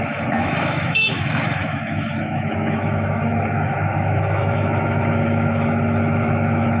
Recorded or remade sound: remade